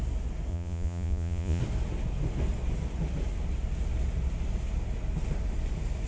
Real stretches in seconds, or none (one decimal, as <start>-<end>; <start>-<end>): 0.0-0.5; 1.6-6.1